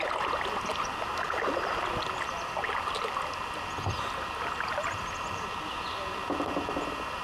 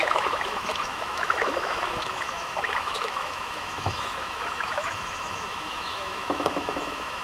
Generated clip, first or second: second